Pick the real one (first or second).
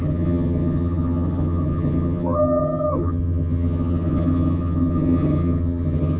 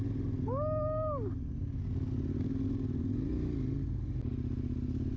second